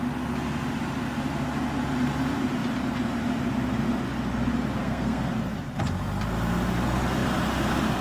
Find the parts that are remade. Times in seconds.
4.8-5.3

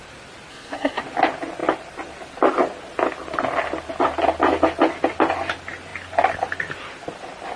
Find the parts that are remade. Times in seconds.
0.5-1.0

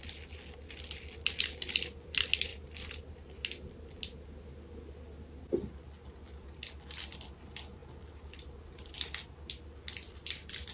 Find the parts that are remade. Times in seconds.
none

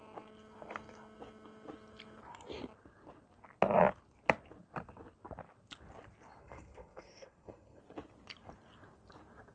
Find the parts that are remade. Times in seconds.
6.4-7.8

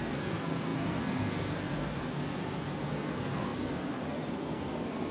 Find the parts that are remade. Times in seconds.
0.0-5.1

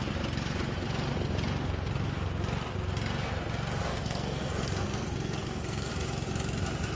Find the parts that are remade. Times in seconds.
3.9-5.9

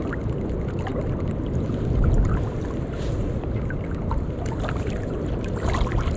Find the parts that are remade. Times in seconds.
none